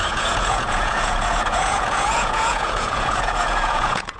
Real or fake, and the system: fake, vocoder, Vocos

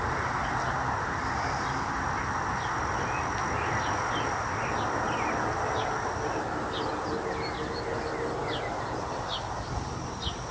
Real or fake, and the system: real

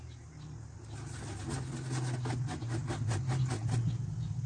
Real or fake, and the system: real